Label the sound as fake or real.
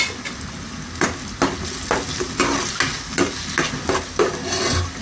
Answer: real